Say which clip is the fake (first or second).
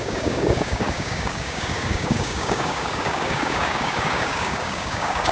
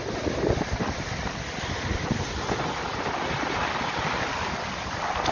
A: first